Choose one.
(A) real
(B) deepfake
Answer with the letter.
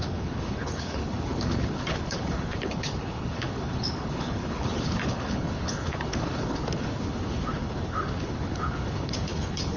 B